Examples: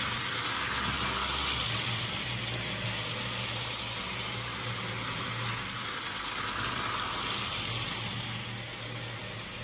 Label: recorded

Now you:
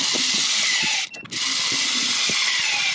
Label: recorded